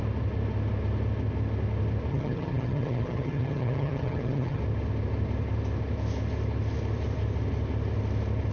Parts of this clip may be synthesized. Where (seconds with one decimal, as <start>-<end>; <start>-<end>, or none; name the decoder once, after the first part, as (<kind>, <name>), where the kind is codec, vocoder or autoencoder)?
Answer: 2.1-4.6 (vocoder, HiFi-GAN)